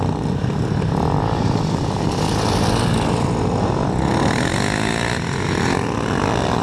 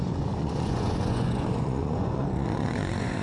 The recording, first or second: first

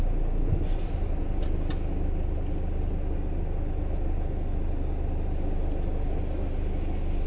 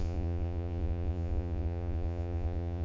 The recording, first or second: first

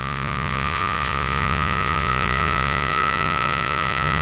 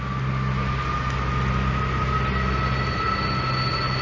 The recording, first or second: second